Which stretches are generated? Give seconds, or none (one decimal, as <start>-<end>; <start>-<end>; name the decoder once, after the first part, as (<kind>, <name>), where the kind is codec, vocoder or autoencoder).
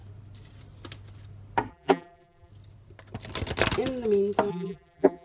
1.7-2.5 (vocoder, BigVGAN v2); 4.5-5.2